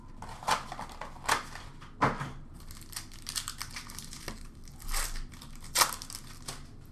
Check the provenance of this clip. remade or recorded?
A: recorded